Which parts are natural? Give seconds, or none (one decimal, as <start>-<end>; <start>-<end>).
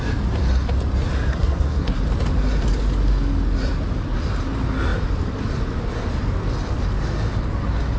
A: 0.0-1.3; 2.0-8.0